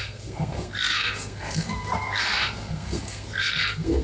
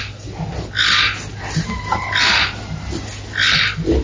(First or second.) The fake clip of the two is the first